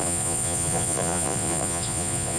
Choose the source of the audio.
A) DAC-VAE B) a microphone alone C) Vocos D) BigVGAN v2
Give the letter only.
C